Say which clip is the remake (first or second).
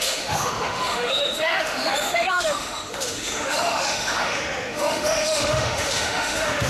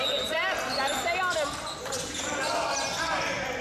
first